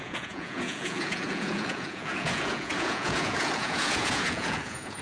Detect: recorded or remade remade